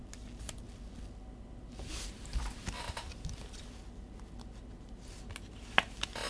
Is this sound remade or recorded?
recorded